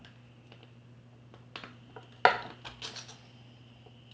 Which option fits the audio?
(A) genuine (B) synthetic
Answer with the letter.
A